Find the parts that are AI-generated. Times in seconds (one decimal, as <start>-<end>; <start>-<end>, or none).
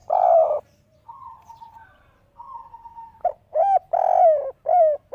0.0-2.7